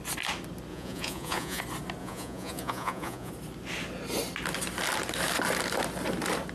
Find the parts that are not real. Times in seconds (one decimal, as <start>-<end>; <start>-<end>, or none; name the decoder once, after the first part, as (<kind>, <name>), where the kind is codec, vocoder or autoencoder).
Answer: 0.7-1.6 (vocoder, Vocos); 2.0-3.3